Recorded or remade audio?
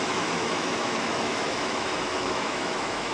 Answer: remade